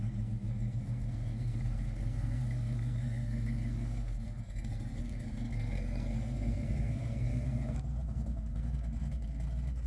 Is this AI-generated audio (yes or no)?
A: yes